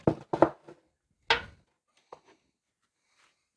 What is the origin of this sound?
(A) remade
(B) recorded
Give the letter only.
B